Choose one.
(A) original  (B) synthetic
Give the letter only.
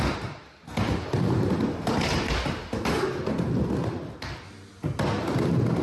A